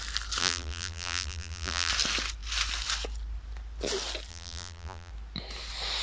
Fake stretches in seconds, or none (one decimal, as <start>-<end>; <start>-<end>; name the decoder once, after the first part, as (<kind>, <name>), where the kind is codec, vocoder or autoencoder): 0.4-1.9 (vocoder, BigVGAN v2); 4.3-5.1